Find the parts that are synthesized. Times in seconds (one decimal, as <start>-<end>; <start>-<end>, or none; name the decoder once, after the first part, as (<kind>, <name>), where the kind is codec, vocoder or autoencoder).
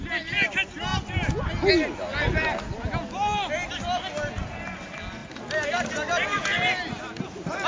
none